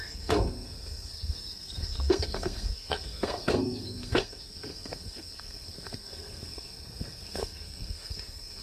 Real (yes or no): no